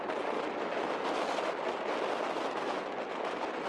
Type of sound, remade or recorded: recorded